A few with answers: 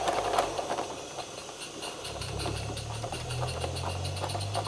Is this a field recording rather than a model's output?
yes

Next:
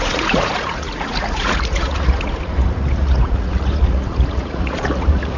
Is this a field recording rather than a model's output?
no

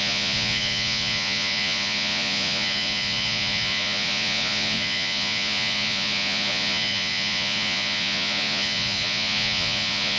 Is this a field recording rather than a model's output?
no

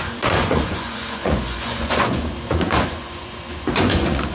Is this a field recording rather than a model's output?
no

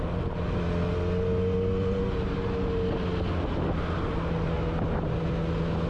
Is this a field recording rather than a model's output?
yes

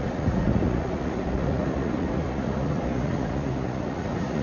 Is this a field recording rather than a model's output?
no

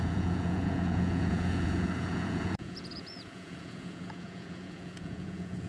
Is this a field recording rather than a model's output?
no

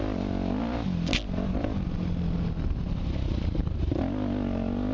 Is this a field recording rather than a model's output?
yes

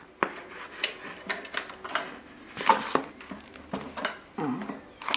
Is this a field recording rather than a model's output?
yes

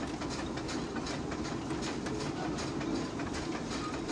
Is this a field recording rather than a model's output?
yes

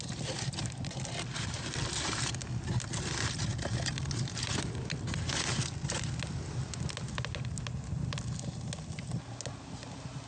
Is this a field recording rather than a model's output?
yes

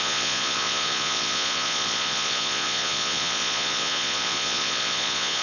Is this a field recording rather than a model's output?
no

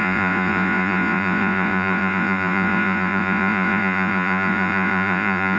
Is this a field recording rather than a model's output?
no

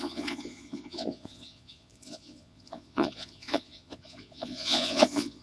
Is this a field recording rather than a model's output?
no